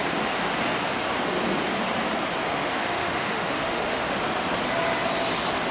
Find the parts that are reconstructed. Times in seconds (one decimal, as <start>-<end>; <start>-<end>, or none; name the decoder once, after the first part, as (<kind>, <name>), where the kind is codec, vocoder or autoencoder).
2.6-4.2 (autoencoder, DAC-VAE)